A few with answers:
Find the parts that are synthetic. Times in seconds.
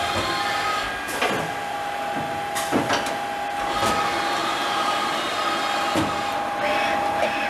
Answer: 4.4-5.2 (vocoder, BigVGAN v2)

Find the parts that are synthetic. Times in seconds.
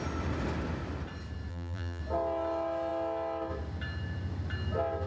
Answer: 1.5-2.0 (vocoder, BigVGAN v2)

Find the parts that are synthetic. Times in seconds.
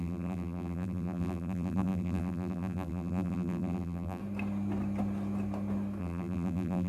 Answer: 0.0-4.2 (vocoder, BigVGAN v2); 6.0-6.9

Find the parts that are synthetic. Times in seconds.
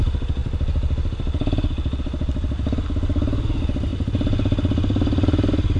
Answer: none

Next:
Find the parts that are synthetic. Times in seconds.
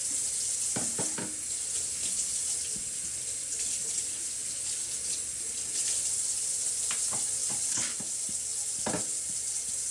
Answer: 1.0-4.4 (vocoder, BigVGAN v2); 5.4-8.5; 9.0-9.9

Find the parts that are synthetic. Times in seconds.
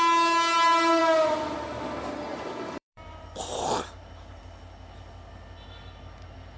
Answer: 2.3-4.4 (vocoder, BigVGAN v2)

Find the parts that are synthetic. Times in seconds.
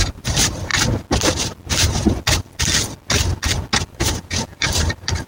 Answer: 0.0-0.7 (vocoder, BigVGAN v2); 3.9-5.3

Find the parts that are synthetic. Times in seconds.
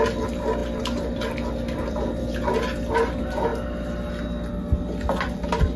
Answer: 0.6-2.3 (vocoder, BigVGAN v2)